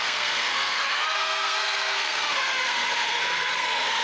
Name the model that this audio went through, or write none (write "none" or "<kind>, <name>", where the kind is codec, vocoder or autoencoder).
codec, SNAC